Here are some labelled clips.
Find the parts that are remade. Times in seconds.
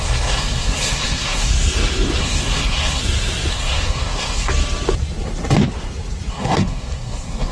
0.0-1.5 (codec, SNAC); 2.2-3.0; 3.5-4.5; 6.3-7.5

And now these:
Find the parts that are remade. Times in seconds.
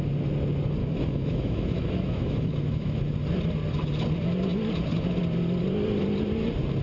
0.8-3.0 (autoencoder, DAC-VAE)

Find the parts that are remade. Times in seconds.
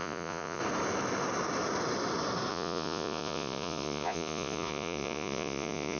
0.0-0.6 (vocoder, Vocos); 2.5-6.0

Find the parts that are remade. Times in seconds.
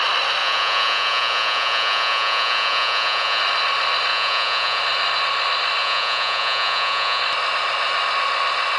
0.4-3.4 (vocoder, Vocos); 4.1-4.8; 5.8-7.2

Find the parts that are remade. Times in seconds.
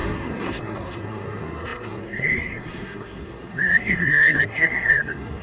0.0-5.4 (codec, SNAC)